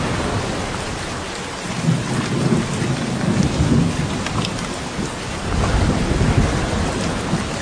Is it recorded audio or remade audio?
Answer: recorded